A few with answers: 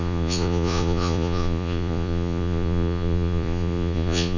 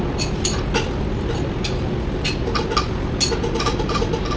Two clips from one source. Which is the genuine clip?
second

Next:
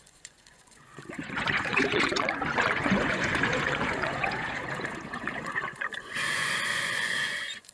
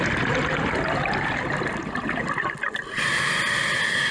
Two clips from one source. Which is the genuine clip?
second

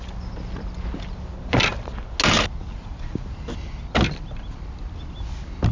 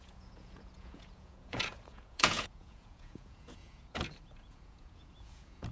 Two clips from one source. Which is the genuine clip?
first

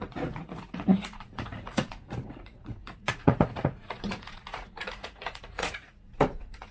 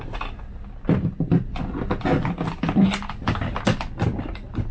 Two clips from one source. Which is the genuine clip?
second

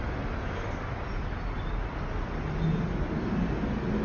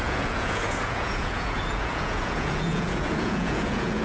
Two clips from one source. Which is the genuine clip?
first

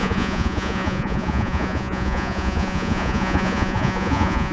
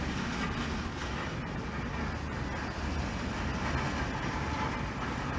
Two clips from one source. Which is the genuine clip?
second